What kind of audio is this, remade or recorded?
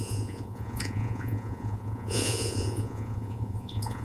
remade